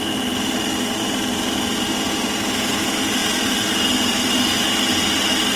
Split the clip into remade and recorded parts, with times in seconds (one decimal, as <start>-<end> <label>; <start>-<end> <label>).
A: 0.0-3.2 recorded; 3.2-4.1 remade; 4.1-5.6 recorded